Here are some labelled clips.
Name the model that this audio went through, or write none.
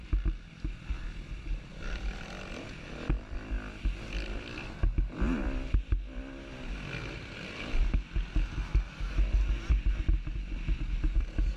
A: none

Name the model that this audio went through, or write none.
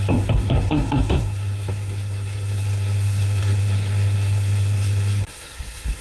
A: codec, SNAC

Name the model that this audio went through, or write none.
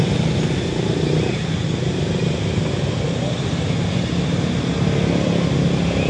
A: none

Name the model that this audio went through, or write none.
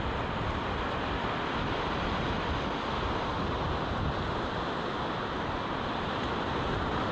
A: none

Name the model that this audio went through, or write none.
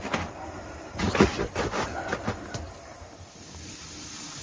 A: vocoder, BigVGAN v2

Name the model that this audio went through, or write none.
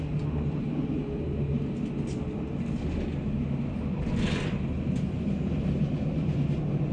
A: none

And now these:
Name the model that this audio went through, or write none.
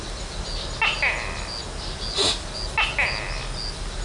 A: none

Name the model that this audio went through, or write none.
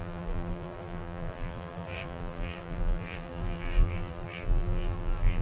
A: vocoder, BigVGAN v2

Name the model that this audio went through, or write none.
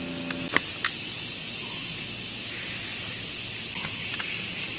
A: none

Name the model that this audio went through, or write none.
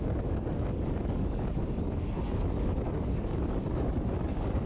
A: codec, DAC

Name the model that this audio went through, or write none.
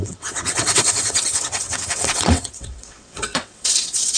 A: vocoder, WaveNeXt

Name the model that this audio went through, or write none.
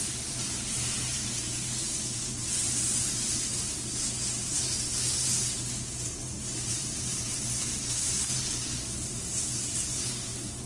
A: vocoder, BigVGAN v2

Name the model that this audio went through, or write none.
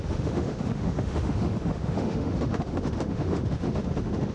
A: autoencoder, DAC-VAE